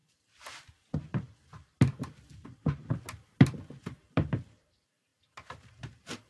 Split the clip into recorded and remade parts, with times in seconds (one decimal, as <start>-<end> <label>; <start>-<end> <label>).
0.0-3.8 recorded; 3.8-6.3 remade